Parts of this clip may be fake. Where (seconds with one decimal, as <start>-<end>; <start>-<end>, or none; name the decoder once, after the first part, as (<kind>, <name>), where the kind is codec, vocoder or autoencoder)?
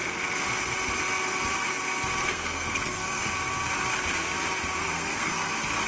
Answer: 2.2-3.3 (codec, SNAC); 4.8-5.5